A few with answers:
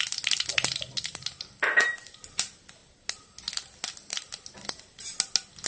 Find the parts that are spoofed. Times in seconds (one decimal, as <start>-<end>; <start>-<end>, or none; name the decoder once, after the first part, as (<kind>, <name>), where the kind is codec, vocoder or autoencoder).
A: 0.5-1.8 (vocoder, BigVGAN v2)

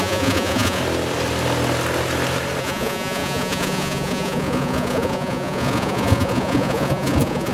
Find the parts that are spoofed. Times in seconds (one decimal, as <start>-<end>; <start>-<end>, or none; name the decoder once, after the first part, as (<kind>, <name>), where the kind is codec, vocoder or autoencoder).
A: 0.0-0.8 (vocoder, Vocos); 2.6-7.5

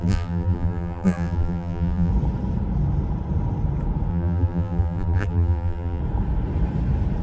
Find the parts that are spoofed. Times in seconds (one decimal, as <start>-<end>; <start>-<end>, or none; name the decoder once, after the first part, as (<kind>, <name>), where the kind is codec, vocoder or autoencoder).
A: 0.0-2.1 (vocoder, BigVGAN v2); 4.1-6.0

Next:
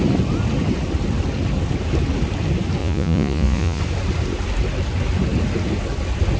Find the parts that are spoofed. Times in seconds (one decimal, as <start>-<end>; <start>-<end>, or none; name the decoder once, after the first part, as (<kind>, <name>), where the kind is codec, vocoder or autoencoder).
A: 2.8-3.8 (vocoder, Vocos)

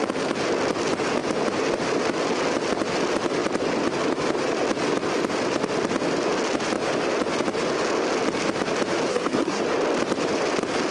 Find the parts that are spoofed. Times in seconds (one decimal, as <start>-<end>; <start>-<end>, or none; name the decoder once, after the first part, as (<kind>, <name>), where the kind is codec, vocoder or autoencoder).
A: 9.1-9.6 (codec, SNAC)